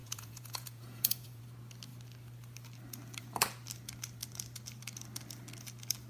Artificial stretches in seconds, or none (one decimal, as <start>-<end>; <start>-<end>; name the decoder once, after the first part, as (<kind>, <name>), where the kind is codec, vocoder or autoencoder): 0.0-1.4 (vocoder, Vocos)